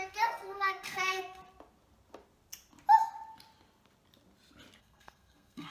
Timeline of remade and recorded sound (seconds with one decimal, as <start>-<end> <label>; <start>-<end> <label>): 0.0-1.4 remade; 1.4-4.8 recorded; 4.8-5.7 remade

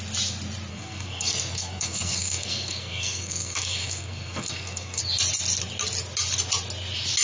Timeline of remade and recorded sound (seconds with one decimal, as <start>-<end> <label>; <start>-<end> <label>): 0.0-0.7 recorded; 0.7-5.0 remade; 5.0-7.2 recorded

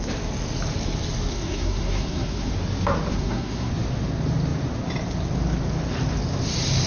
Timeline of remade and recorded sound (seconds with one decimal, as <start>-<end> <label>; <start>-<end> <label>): 0.0-1.3 recorded; 1.3-2.5 remade; 2.5-3.1 recorded; 3.1-3.7 remade; 3.7-6.9 recorded

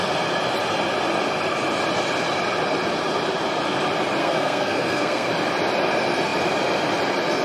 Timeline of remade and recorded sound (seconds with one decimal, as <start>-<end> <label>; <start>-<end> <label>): 0.0-4.2 recorded; 4.2-5.3 remade; 5.3-7.4 recorded